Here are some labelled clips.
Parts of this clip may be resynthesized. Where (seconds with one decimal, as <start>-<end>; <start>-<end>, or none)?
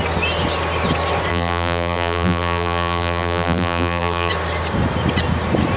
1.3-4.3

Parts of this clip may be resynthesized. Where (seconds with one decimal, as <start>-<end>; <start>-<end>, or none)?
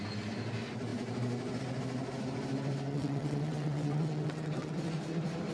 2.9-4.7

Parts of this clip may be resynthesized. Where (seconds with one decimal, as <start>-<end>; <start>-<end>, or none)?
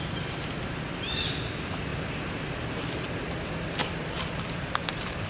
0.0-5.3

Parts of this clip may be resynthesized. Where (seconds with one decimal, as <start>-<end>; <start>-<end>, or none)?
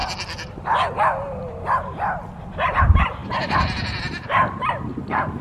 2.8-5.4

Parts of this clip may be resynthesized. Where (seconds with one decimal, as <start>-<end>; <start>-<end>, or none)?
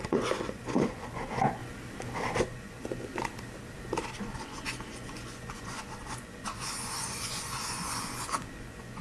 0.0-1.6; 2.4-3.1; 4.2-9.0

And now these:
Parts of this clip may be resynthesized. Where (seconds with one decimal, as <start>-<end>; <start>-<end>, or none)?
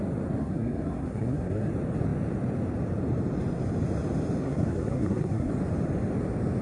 0.4-1.7; 4.4-5.5